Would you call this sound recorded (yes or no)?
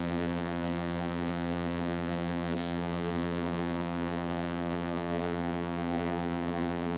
no